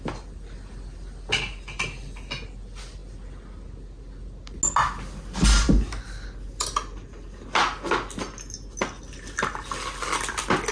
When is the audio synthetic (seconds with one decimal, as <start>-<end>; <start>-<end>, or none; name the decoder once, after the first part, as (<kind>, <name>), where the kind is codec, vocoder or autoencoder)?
none